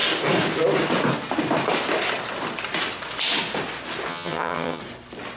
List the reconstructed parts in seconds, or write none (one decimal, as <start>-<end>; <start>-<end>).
4.1-4.8